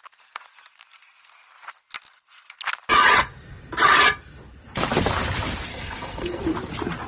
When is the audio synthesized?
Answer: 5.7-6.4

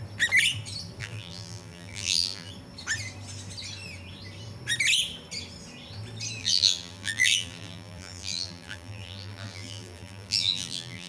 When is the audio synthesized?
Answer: 1.0-2.5; 6.4-11.1

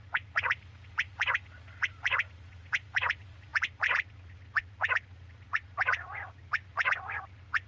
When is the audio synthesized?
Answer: 0.0-7.7

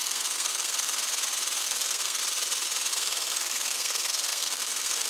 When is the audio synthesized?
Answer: 0.0-1.0; 1.6-2.2; 2.9-5.1

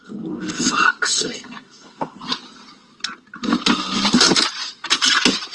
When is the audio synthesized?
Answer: 0.0-2.2

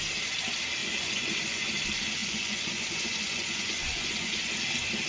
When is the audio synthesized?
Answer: 0.8-1.7; 2.2-4.5

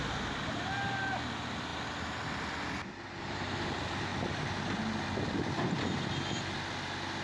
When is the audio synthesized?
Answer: none